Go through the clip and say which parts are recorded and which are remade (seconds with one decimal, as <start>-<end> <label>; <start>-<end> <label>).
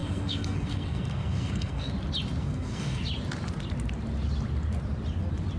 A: 0.0-1.9 remade; 1.9-2.4 recorded; 2.4-3.0 remade; 3.0-5.6 recorded